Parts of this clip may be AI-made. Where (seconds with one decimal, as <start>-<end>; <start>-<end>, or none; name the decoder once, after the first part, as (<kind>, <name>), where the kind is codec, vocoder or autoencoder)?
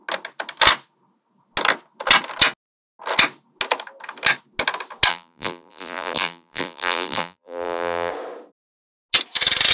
5.1-8.1 (vocoder, BigVGAN v2)